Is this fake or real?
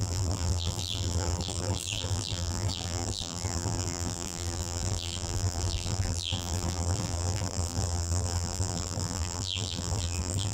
fake